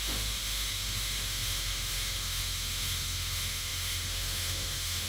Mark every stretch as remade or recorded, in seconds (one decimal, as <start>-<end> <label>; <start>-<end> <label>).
0.0-5.1 remade